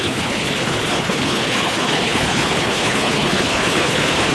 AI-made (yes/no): yes